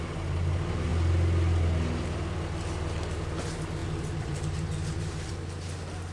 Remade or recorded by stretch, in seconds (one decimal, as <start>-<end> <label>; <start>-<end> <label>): 0.0-3.8 recorded; 3.8-5.3 remade; 5.3-6.1 recorded